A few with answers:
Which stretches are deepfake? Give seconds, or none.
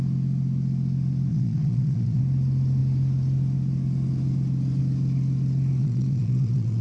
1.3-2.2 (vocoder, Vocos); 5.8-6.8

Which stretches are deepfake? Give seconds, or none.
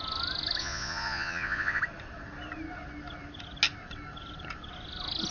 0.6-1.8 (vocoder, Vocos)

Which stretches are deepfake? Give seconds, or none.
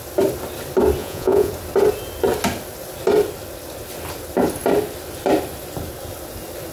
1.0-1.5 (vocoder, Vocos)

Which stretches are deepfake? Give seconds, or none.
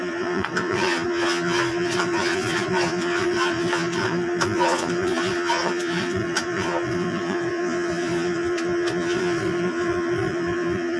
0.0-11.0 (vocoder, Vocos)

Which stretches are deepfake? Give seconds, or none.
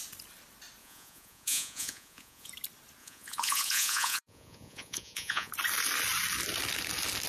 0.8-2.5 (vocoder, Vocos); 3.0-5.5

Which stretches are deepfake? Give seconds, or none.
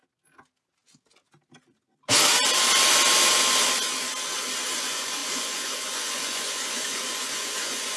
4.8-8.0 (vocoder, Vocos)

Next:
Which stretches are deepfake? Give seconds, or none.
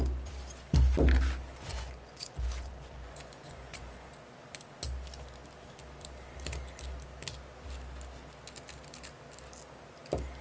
1.7-4.1 (vocoder, Vocos)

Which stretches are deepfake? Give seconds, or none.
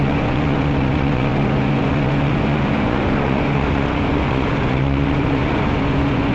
0.0-6.3 (vocoder, Vocos)